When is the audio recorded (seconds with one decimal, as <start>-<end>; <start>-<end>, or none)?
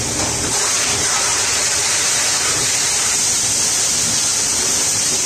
0.0-1.3; 1.9-4.3